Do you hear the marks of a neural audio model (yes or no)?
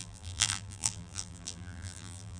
yes